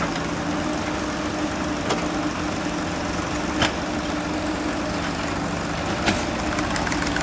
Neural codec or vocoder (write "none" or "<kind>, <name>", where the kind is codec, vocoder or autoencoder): none